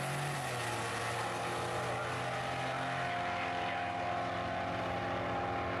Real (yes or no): yes